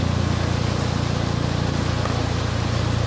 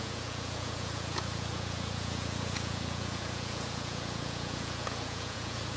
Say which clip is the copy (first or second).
second